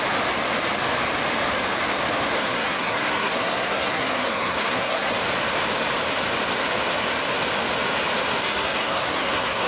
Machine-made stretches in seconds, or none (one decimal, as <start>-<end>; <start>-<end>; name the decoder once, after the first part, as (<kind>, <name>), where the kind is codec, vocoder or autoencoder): 2.4-5.1 (codec, SNAC); 8.4-9.7